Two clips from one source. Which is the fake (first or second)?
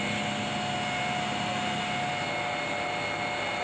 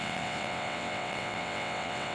second